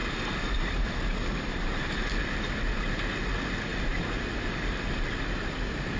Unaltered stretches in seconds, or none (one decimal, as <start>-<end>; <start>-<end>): 2.4-3.7; 4.5-6.0